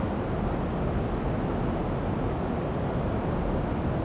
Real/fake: real